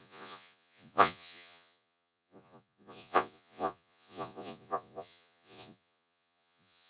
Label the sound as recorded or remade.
remade